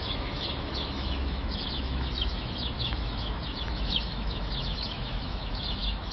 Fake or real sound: fake